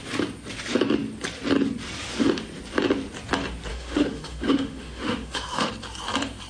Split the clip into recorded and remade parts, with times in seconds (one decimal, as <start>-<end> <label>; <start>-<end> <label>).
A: 0.0-3.7 recorded; 3.7-5.7 remade; 5.7-6.5 recorded